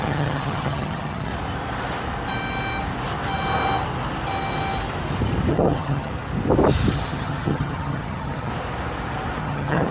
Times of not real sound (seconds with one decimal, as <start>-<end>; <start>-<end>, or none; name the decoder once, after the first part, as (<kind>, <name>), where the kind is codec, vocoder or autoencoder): 0.0-1.3 (vocoder, HiFi-GAN); 5.5-6.1; 6.9-8.5; 9.4-9.9